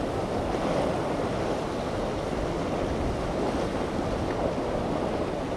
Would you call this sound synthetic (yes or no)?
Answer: no